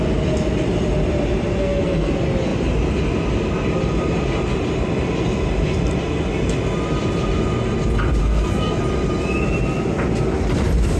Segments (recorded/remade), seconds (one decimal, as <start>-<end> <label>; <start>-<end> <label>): 0.0-1.5 recorded; 1.5-2.1 remade; 2.1-8.2 recorded; 8.2-8.8 remade; 8.8-11.0 recorded